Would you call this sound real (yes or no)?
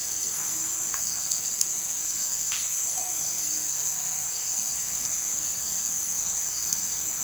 no